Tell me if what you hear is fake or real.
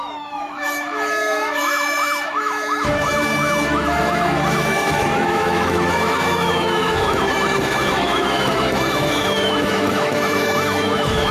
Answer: fake